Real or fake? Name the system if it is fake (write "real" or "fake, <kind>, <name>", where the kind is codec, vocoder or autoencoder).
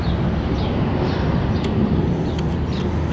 real